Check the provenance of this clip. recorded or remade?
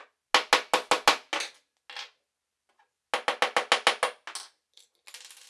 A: recorded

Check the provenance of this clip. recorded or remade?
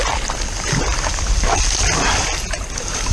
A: recorded